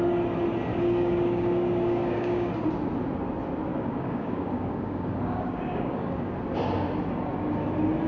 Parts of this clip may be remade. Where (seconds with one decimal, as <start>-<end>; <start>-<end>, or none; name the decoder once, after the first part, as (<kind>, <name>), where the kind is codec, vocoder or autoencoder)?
0.7-2.5 (codec, DAC); 3.7-6.3